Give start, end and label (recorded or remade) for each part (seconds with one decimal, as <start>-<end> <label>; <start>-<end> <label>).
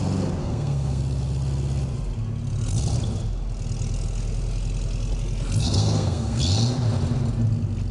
0.0-0.4 recorded; 0.4-1.0 remade; 1.0-5.6 recorded; 5.6-6.4 remade; 6.4-7.9 recorded